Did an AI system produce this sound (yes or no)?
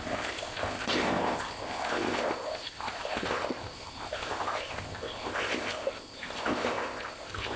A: yes